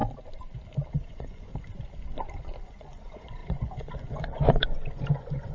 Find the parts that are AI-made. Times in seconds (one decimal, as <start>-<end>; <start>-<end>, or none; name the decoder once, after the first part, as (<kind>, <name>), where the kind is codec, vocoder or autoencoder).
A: 0.9-1.5 (vocoder, Vocos); 2.6-5.5